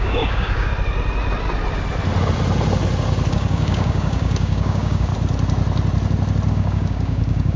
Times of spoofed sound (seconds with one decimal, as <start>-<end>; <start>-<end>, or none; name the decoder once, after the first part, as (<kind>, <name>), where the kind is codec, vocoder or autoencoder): 0.0-0.7 (codec, DAC); 3.3-5.1; 6.5-7.6